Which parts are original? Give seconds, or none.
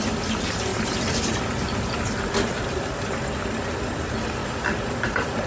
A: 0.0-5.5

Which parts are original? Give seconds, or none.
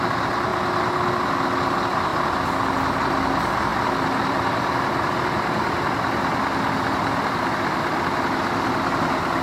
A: 0.0-9.4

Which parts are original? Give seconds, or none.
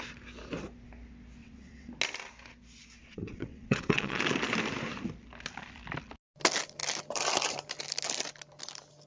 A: 0.0-1.4; 1.9-3.0; 4.2-9.1